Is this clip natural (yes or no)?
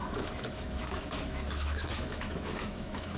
no